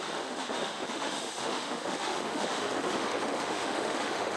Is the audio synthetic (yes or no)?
yes